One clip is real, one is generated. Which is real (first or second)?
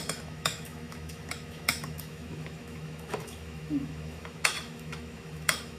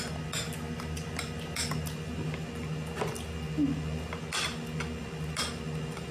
second